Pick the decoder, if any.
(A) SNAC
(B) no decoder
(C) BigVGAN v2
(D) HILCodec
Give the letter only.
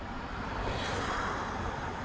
C